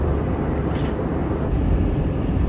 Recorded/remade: remade